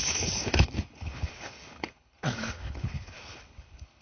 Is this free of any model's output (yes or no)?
no